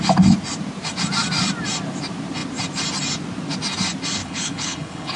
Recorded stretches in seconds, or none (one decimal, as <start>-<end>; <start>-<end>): 0.0-4.2

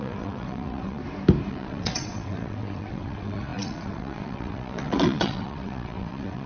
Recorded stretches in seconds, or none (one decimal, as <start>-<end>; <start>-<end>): 1.0-1.5

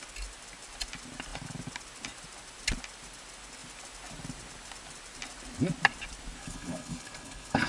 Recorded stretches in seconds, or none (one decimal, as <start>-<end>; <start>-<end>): 0.0-6.4

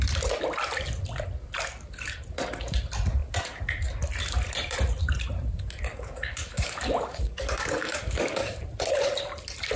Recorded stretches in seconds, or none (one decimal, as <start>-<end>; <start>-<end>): 0.0-5.9; 8.6-9.8